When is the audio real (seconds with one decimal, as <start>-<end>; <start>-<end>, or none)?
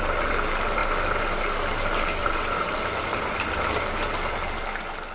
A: 0.0-5.1